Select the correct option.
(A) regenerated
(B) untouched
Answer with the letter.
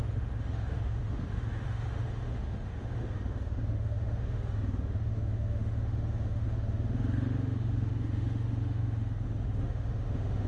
A